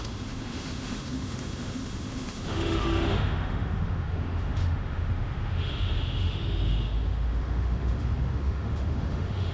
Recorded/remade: remade